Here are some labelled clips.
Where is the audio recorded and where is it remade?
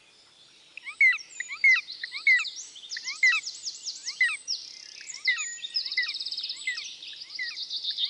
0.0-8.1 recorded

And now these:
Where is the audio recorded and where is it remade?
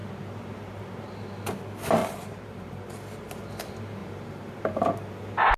0.0-2.0 recorded; 2.0-3.0 remade; 3.0-4.0 recorded; 4.0-4.8 remade; 4.8-5.6 recorded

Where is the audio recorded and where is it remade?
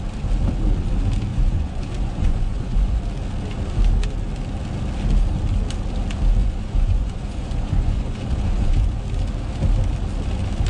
0.0-1.3 recorded; 1.3-3.0 remade; 3.0-6.4 recorded; 6.4-9.0 remade; 9.0-10.7 recorded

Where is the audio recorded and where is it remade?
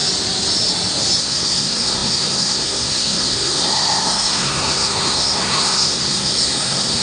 0.0-1.2 recorded; 1.2-7.0 remade